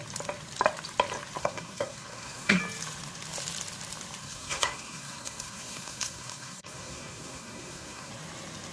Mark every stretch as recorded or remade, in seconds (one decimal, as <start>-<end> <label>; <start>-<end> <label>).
0.0-1.4 recorded; 1.4-2.6 remade; 2.6-4.2 recorded; 4.2-8.1 remade; 8.1-8.7 recorded